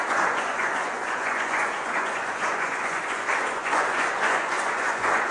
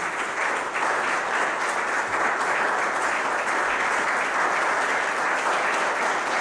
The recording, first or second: second